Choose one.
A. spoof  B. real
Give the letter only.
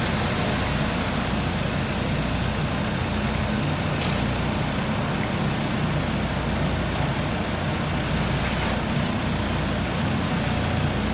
B